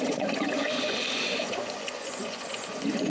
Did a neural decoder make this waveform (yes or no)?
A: yes